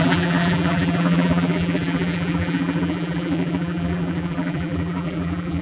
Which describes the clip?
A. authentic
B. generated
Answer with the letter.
B